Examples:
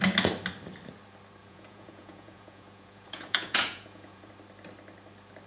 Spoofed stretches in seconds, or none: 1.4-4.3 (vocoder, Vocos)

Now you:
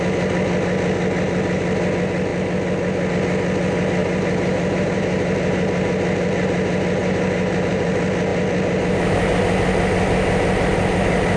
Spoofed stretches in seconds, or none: 4.0-5.9 (vocoder, BigVGAN v2); 7.0-7.9